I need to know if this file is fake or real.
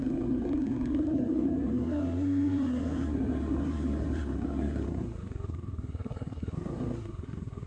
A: fake